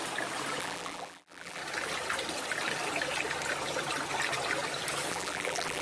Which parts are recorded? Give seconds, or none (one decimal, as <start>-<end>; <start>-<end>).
0.0-0.6; 1.6-5.1